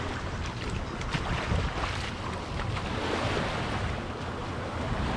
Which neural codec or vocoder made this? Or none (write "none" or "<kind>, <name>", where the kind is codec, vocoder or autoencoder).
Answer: none